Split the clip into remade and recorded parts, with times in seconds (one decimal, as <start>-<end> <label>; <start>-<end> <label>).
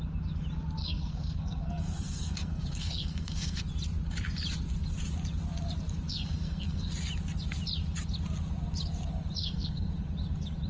0.0-0.8 recorded; 0.8-3.6 remade; 3.6-6.1 recorded; 6.1-6.9 remade; 6.9-9.4 recorded; 9.4-9.9 remade; 9.9-10.7 recorded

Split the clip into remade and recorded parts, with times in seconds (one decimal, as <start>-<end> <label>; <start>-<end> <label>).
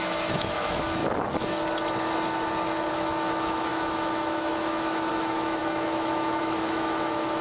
0.0-1.0 remade; 1.0-2.9 recorded; 2.9-7.4 remade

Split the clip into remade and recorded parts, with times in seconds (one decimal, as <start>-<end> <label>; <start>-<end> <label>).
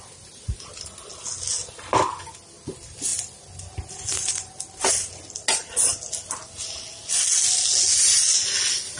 0.0-9.0 recorded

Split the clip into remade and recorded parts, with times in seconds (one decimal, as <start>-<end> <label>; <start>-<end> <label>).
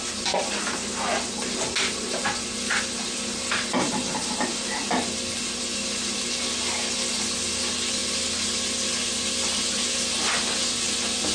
0.0-11.3 recorded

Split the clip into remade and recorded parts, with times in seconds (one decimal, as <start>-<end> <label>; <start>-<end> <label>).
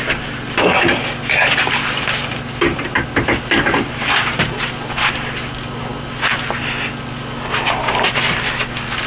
0.0-9.1 recorded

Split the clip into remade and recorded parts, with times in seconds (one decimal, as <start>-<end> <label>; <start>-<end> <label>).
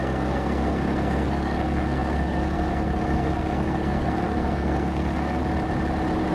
0.0-5.4 remade; 5.4-6.3 recorded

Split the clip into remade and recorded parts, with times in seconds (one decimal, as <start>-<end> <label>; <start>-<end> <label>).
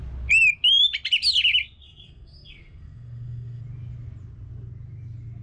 0.0-1.8 recorded; 1.8-3.6 remade; 3.6-5.4 recorded